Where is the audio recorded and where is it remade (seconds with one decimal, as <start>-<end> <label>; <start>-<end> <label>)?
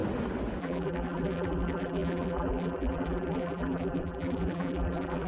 0.0-0.6 recorded; 0.6-5.3 remade